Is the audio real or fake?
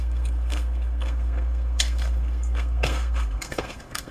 fake